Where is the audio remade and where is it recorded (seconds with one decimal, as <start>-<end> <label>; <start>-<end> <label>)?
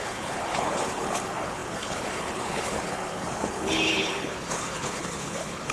0.0-5.7 remade